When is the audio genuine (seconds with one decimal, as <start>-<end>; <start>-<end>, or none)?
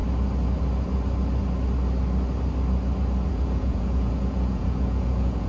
0.0-3.3